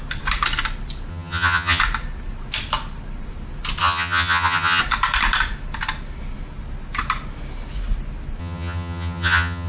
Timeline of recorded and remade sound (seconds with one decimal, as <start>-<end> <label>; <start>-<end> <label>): 0.0-1.1 recorded; 1.1-1.8 remade; 1.8-3.8 recorded; 3.8-4.8 remade; 4.8-8.4 recorded; 8.4-9.7 remade